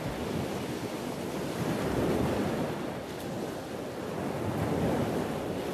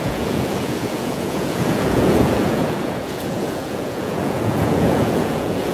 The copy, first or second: second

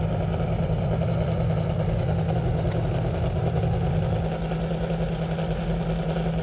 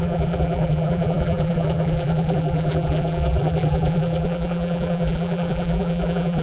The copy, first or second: second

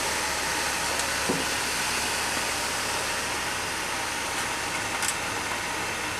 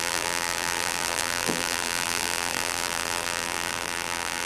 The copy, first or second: second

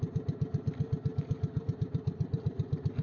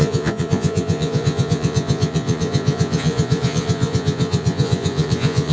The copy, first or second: second